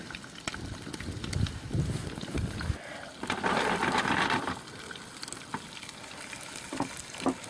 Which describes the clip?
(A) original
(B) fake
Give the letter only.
A